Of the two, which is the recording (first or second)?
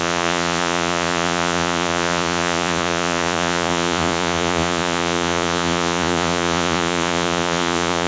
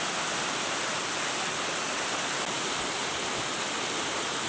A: second